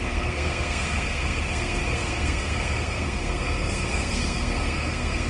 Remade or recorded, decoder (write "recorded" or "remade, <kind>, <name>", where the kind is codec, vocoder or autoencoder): remade, codec, SNAC